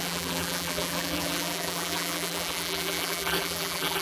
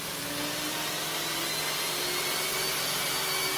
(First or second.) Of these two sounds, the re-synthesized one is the first